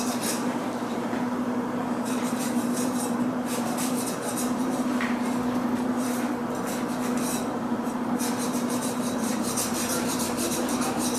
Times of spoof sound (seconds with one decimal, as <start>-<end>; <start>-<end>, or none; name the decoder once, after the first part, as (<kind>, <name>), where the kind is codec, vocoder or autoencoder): 0.0-6.4 (vocoder, BigVGAN v2); 7.4-11.2